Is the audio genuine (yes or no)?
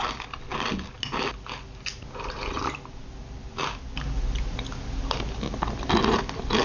yes